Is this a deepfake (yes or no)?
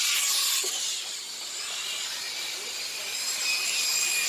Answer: no